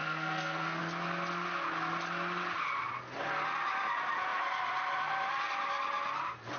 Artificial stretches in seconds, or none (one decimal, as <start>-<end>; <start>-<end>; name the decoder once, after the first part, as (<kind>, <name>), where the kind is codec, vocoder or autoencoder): 0.0-0.8 (codec, SNAC)